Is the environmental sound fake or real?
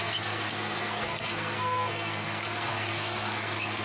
fake